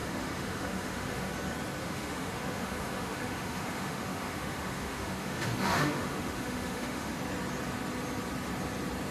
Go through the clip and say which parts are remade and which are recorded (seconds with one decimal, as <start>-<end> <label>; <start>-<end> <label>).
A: 0.0-1.3 remade; 1.3-1.8 recorded; 1.8-7.1 remade; 7.1-9.1 recorded